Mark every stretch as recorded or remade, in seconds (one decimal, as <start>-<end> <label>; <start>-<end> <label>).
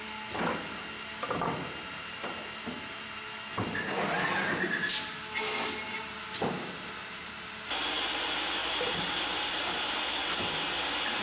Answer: 0.0-11.2 recorded